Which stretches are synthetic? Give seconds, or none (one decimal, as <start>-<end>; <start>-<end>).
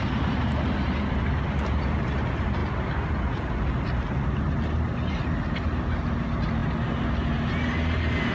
none